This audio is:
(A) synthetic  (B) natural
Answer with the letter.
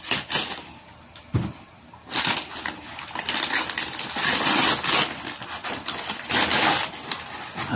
B